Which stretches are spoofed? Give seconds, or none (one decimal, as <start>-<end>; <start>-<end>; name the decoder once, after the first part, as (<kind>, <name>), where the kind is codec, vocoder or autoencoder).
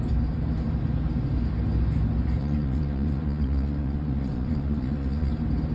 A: 2.4-5.3 (vocoder, Vocos)